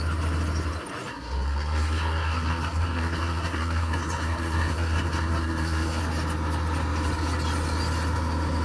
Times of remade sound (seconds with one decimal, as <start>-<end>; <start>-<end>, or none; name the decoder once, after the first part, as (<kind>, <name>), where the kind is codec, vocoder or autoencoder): 1.1-6.0 (codec, SNAC)